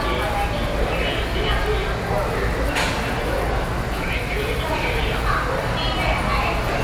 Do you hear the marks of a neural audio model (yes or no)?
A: no